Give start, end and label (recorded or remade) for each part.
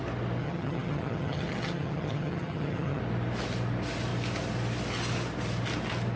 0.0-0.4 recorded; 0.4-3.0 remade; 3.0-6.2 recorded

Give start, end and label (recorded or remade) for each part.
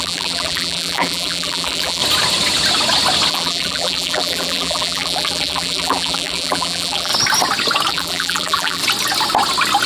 0.0-2.0 remade; 2.0-3.3 recorded; 3.3-7.1 remade; 7.1-7.9 recorded; 7.9-8.8 remade; 8.8-9.9 recorded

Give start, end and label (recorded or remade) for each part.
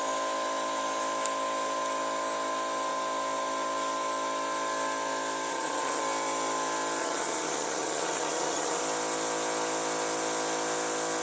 0.0-5.5 recorded; 5.5-6.0 remade; 6.0-7.0 recorded; 7.0-8.8 remade; 8.8-11.2 recorded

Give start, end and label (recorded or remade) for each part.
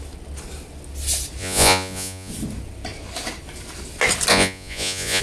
0.0-1.4 recorded; 1.4-2.3 remade; 2.3-4.3 recorded; 4.3-5.2 remade